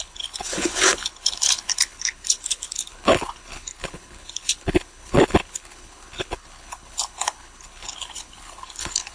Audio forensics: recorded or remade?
remade